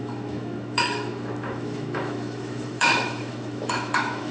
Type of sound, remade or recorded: remade